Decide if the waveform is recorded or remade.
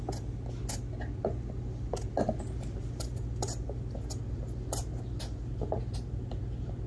recorded